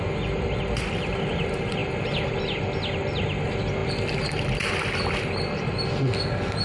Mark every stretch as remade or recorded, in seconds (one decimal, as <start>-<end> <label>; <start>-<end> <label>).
0.0-6.6 recorded